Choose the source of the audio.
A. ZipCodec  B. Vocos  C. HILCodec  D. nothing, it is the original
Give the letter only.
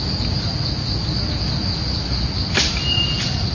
D